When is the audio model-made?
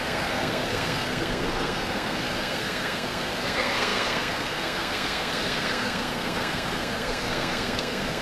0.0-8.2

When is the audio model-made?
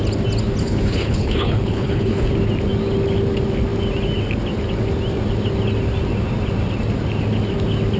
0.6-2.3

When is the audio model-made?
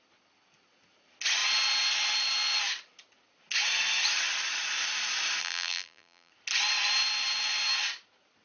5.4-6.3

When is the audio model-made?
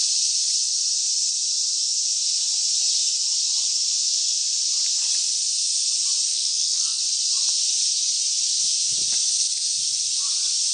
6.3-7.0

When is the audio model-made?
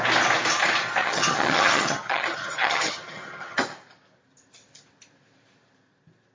1.0-3.6